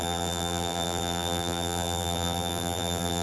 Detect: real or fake fake